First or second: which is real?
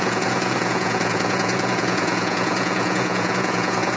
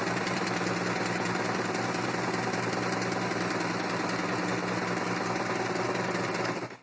second